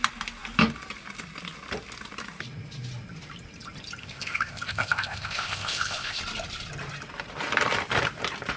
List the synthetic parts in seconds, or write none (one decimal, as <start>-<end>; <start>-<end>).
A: 4.0-6.2